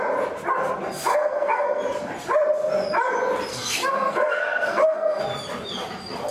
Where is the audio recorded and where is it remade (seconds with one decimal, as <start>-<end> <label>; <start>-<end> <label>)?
0.0-1.1 recorded; 1.1-1.8 remade; 1.8-3.5 recorded; 3.5-5.2 remade; 5.2-6.3 recorded